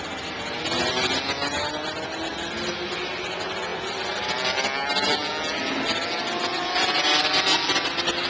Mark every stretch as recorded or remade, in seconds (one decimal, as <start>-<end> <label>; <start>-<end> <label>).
0.0-8.3 recorded